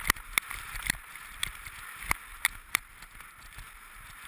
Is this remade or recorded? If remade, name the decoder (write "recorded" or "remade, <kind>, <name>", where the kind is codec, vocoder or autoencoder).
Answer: recorded